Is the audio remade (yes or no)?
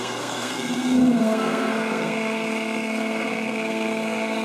yes